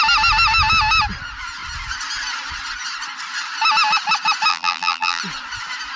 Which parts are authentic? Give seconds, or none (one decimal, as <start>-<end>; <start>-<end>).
0.0-4.5; 5.2-6.0